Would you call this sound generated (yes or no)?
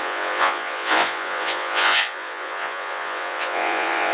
yes